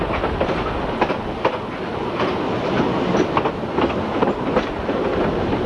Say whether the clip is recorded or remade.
recorded